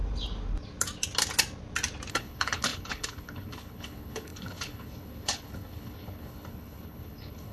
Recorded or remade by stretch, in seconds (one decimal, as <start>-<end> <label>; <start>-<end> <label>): 0.0-2.1 recorded; 2.1-7.5 remade